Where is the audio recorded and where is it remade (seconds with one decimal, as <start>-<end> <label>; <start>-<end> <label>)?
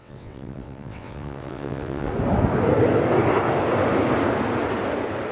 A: 0.0-2.1 remade; 2.1-5.3 recorded